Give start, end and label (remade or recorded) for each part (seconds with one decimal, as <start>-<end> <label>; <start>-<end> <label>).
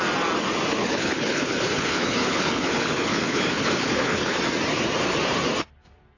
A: 0.0-0.7 recorded; 0.7-4.4 remade; 4.4-6.2 recorded